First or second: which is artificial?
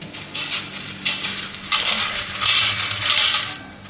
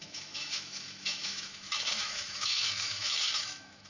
second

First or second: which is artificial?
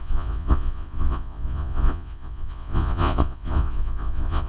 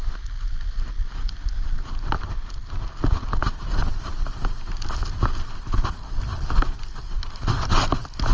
first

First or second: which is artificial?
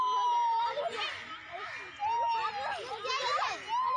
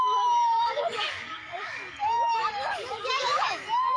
second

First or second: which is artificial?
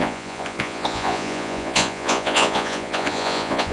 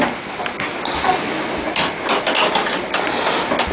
first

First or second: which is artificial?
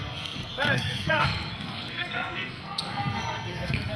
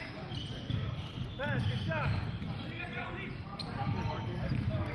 first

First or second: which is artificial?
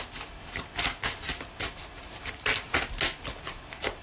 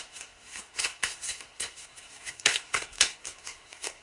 second